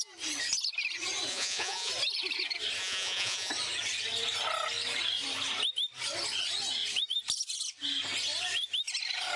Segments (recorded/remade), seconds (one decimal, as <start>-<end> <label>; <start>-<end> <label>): 0.0-1.3 recorded; 1.3-1.9 remade; 1.9-2.8 recorded; 2.8-3.5 remade; 3.5-9.4 recorded